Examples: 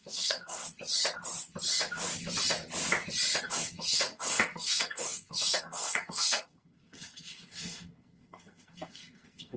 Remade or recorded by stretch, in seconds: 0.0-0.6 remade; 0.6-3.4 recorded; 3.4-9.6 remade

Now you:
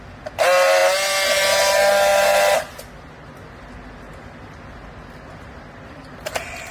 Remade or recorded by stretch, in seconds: 0.0-6.7 recorded

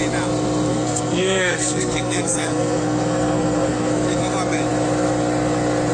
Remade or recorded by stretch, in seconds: 0.0-0.7 recorded; 0.7-4.2 remade; 4.2-5.9 recorded

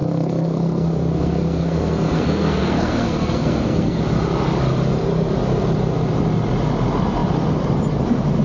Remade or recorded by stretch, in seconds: 0.0-4.0 remade; 4.0-8.4 recorded